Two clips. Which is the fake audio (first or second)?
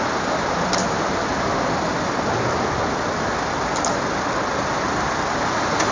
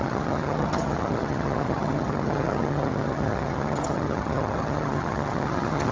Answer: second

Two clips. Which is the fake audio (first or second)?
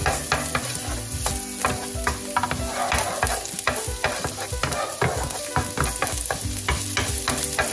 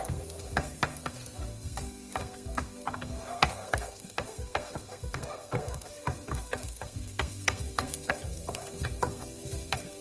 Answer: second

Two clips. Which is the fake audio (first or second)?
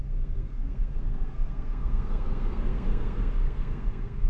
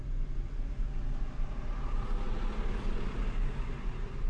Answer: first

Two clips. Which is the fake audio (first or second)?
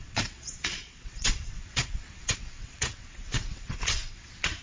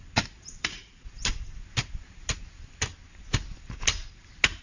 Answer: first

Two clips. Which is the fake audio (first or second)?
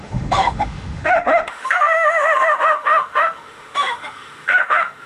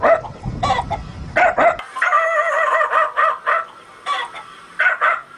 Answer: first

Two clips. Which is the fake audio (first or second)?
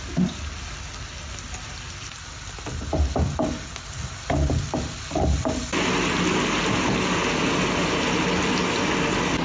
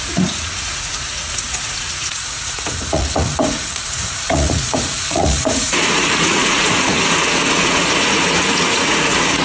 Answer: second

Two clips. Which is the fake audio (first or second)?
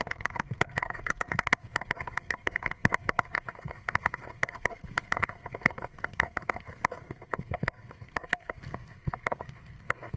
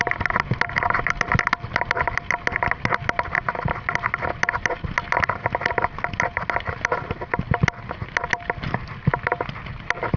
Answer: first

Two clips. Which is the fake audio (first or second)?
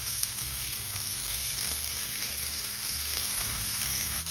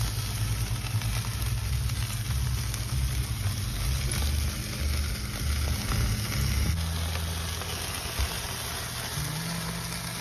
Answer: first